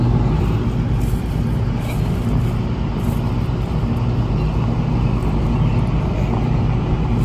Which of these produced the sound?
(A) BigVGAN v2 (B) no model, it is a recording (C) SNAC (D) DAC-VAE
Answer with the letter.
B